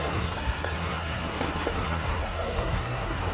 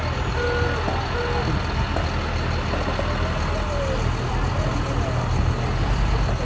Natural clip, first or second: second